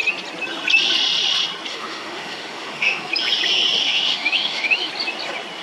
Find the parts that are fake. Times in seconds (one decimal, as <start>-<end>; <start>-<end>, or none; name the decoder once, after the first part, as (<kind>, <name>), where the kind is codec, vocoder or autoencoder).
1.7-3.1 (autoencoder, DAC-VAE); 3.8-4.9